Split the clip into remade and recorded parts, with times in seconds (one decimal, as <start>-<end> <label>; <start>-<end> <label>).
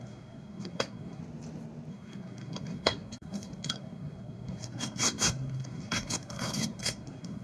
0.0-1.2 remade; 1.2-1.9 recorded; 1.9-7.4 remade